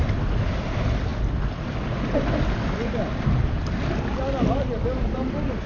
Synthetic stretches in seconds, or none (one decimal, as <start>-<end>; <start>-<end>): none